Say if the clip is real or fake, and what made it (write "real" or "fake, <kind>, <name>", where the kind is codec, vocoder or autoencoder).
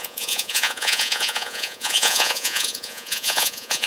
fake, vocoder, Vocos